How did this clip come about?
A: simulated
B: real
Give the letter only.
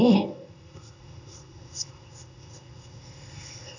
A